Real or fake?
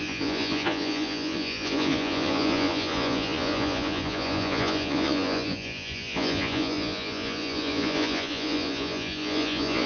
fake